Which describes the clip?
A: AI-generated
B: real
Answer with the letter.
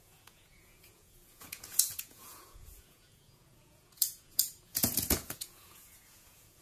A